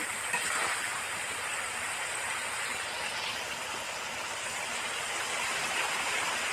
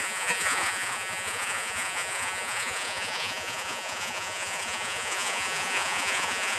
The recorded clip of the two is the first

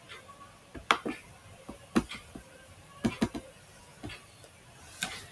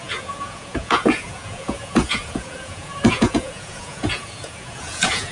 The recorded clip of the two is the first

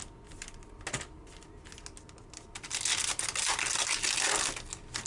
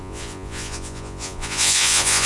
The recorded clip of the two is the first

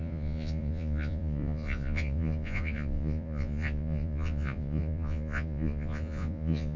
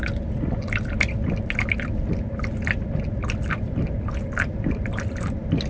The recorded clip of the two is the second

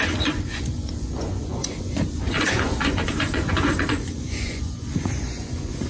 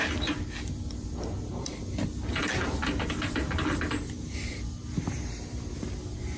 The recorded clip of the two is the second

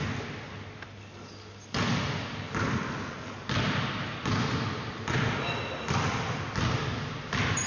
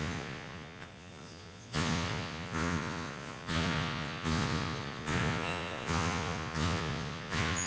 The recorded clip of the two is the first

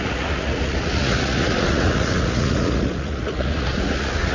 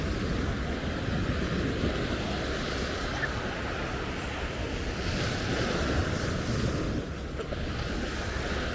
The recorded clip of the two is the second